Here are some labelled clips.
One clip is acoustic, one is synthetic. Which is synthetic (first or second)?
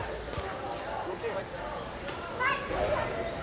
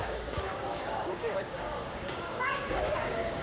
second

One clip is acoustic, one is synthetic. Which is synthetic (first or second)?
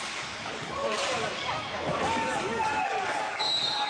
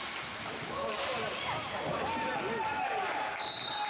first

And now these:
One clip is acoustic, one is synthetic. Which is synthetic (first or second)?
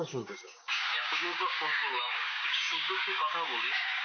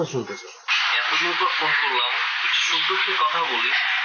first